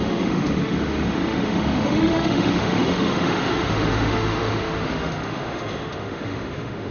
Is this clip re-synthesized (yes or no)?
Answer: yes